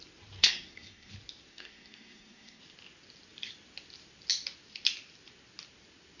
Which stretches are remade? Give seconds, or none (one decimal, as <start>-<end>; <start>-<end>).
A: 0.4-1.1; 1.5-2.6